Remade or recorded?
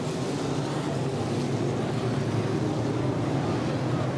recorded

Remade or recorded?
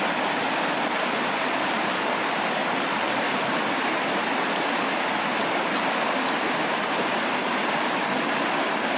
recorded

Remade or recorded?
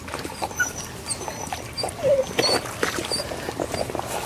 recorded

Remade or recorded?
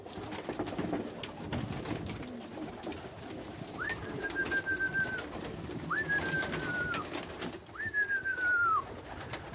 recorded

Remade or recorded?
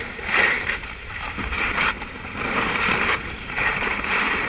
remade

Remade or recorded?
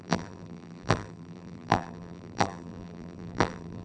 remade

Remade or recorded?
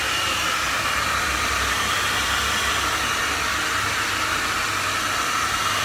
remade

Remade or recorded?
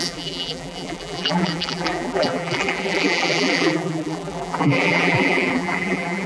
remade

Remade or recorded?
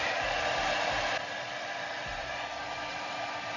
remade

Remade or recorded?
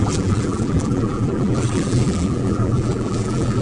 remade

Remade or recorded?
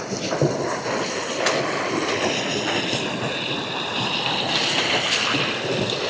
recorded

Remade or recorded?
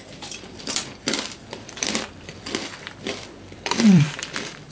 remade